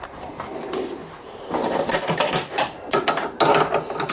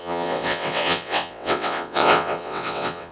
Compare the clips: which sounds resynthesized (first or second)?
second